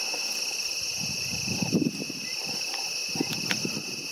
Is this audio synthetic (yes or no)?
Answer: no